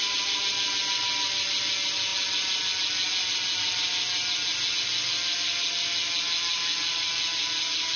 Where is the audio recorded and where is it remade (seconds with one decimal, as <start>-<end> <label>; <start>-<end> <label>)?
0.0-8.0 recorded